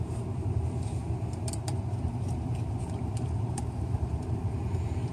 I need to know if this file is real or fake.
fake